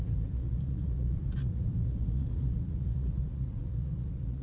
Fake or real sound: fake